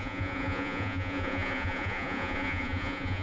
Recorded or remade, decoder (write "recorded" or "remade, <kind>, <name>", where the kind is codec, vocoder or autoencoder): remade, vocoder, Vocos